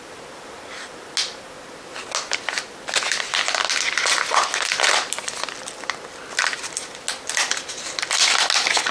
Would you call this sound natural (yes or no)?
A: yes